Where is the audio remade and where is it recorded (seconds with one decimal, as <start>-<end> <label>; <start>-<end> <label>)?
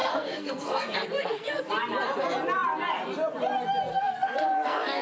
0.0-1.6 remade; 1.6-3.9 recorded; 3.9-5.0 remade